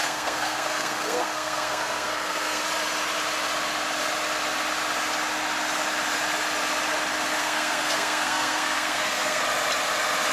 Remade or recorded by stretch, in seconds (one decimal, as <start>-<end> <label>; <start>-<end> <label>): 0.0-2.6 remade; 2.6-7.4 recorded; 7.4-9.4 remade; 9.4-10.3 recorded